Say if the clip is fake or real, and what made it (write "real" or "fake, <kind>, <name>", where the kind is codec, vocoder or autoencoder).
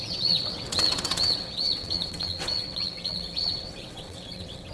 fake, vocoder, WaveNeXt